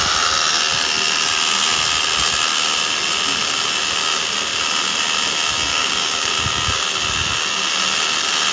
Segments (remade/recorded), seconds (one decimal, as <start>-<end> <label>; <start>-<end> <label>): 0.0-5.7 recorded; 5.7-6.3 remade; 6.3-8.5 recorded